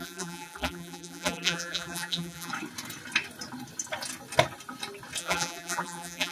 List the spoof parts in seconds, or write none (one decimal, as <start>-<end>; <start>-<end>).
0.0-2.5; 5.2-6.3